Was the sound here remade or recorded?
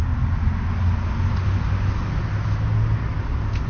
recorded